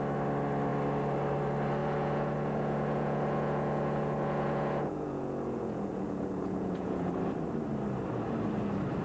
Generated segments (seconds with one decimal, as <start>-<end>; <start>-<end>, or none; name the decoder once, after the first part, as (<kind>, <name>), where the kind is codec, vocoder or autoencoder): 1.8-7.1 (vocoder, Vocos)